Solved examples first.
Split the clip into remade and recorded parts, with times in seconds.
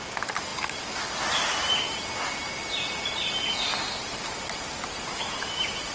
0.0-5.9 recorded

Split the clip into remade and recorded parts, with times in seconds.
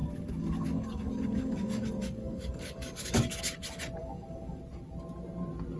0.0-3.4 remade; 3.4-4.0 recorded; 4.0-4.6 remade; 4.6-5.8 recorded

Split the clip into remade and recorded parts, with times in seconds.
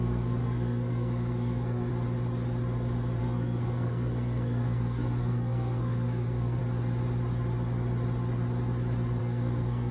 0.0-1.9 remade; 1.9-3.2 recorded; 3.2-6.6 remade; 6.6-9.2 recorded; 9.2-9.9 remade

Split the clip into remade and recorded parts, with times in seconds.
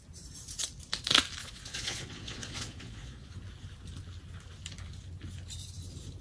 0.0-1.4 recorded; 1.4-3.3 remade; 3.3-6.2 recorded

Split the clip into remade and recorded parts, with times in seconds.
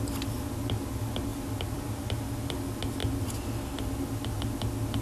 0.0-1.3 recorded; 1.3-2.6 remade; 2.6-5.0 recorded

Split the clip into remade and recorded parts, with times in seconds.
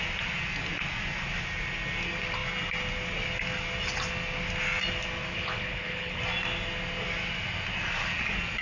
0.0-5.3 recorded; 5.3-6.2 remade; 6.2-8.6 recorded